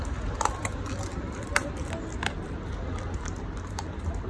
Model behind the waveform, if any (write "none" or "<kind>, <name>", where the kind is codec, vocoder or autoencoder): none